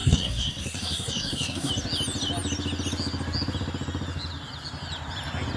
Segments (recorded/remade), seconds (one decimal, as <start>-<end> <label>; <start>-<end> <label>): 0.0-1.7 remade; 1.7-5.6 recorded